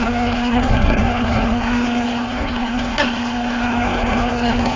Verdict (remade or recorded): remade